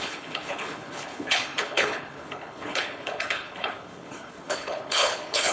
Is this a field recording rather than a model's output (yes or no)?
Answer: no